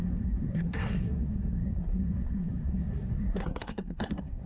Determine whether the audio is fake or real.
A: fake